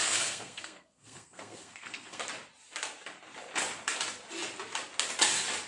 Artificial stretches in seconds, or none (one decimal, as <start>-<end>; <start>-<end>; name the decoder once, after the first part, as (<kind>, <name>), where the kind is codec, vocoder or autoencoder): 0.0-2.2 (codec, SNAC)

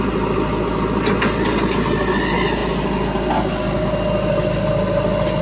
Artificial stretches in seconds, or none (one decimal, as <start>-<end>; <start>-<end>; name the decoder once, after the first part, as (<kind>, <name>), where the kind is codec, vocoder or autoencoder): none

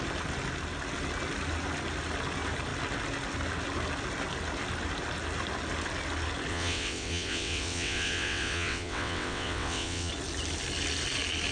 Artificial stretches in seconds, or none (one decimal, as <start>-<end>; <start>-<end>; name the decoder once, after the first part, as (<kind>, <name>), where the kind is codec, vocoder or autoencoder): 6.5-10.1 (vocoder, WaveNeXt)

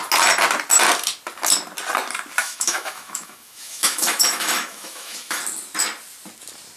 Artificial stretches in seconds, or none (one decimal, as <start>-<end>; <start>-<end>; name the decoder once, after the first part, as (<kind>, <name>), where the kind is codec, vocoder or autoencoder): 2.4-5.4 (autoencoder, DAC-VAE)

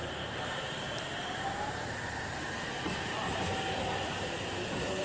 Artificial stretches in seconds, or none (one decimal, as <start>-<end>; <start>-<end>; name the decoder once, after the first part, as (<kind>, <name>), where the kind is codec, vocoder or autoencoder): none

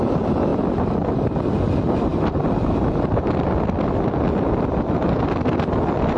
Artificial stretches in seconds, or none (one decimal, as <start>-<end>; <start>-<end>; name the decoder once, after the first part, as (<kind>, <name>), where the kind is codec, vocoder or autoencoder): none

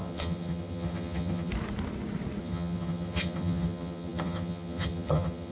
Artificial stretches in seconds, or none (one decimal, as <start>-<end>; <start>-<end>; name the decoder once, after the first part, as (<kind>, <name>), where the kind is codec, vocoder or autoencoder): 0.0-1.5 (vocoder, HiFi-GAN); 2.4-5.5